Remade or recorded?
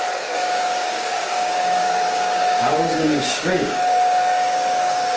remade